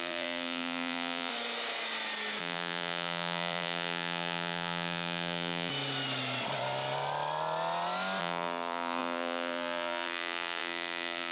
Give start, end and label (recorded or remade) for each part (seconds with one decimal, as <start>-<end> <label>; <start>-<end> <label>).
0.0-1.3 remade; 1.3-2.4 recorded; 2.4-5.7 remade; 5.7-8.2 recorded; 8.2-11.3 remade